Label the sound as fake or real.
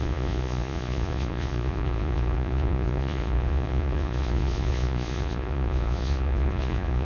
fake